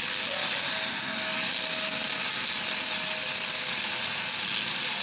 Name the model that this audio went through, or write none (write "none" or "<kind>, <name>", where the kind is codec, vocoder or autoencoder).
none